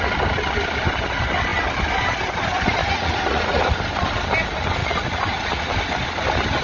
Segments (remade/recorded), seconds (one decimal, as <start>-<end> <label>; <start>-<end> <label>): 0.0-2.8 recorded; 2.8-3.6 remade; 3.6-4.8 recorded; 4.8-5.7 remade; 5.7-6.6 recorded